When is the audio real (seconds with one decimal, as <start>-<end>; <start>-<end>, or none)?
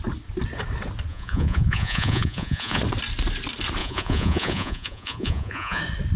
0.0-1.1; 2.8-3.8; 5.8-6.2